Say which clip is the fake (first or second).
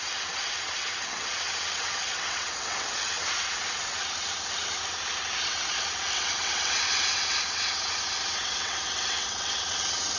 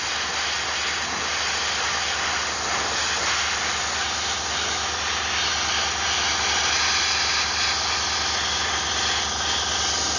first